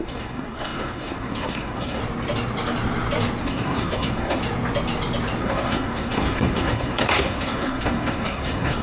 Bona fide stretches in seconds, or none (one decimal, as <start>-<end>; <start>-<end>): 2.0-3.4; 4.4-5.4